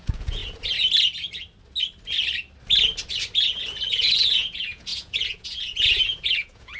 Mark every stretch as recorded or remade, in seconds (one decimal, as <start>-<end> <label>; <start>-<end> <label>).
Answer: 0.0-0.4 remade; 0.4-3.9 recorded; 3.9-6.8 remade